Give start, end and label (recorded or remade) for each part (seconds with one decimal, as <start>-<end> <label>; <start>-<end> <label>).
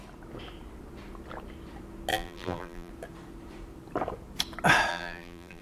0.0-2.1 recorded; 2.1-2.9 remade; 2.9-4.9 recorded; 4.9-5.6 remade